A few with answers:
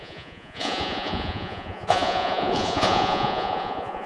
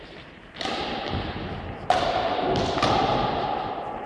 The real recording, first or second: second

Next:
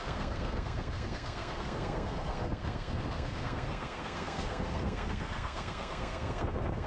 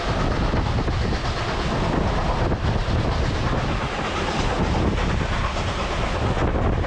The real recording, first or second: second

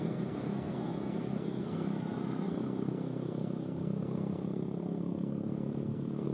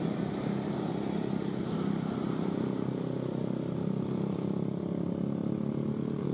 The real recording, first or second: second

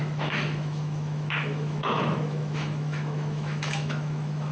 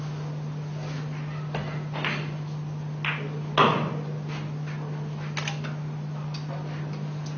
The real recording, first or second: second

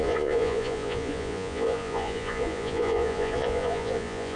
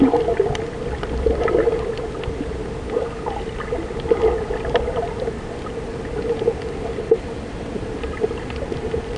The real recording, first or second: second